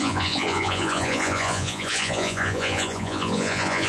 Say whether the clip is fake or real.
fake